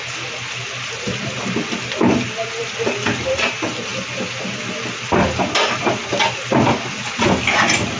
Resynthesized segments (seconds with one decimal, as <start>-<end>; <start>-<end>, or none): 2.6-3.5